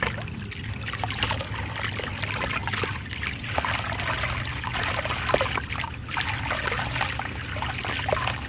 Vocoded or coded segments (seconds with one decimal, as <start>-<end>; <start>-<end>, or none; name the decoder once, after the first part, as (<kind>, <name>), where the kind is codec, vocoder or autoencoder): none